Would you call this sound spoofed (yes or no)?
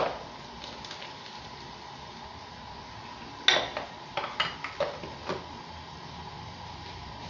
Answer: no